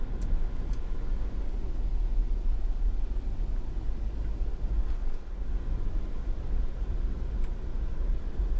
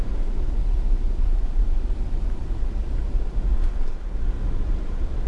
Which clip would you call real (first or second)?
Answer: first